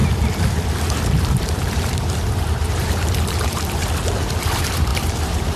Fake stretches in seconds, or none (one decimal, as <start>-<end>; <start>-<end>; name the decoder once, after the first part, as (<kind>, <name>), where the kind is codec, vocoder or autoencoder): 1.2-3.8 (vocoder, BigVGAN v2); 4.4-5.6